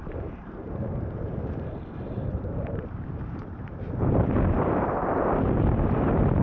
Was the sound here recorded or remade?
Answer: remade